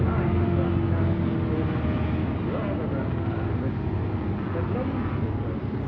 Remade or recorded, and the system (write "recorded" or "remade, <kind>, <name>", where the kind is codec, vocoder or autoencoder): recorded